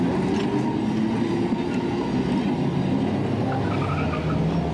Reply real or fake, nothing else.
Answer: real